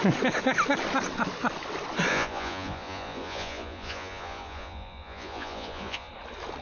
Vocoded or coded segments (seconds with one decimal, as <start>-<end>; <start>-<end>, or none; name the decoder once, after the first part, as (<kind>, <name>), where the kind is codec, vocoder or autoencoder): 2.1-6.1 (vocoder, Vocos)